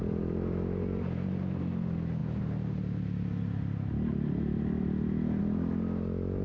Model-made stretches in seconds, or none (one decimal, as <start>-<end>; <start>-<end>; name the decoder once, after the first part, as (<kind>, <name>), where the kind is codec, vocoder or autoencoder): none